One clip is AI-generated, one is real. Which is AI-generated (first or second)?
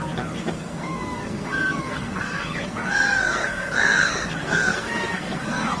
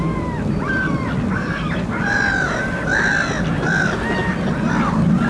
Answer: first